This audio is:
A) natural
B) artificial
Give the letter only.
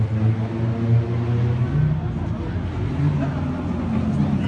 A